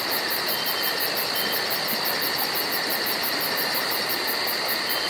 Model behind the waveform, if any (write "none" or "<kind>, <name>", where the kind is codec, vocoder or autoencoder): none